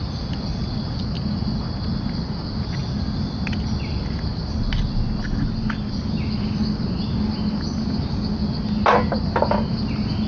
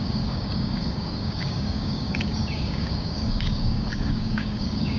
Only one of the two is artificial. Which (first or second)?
second